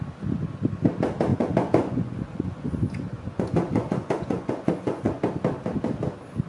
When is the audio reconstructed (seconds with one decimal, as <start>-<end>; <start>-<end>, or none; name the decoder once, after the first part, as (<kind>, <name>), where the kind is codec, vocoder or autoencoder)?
1.3-5.2 (vocoder, Vocos)